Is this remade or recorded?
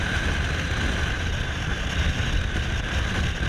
recorded